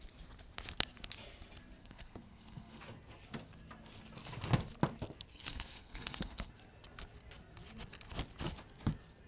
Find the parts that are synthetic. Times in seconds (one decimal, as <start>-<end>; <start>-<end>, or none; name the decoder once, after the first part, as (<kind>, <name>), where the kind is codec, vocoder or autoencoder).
1.8-2.8 (codec, SNAC); 5.3-6.5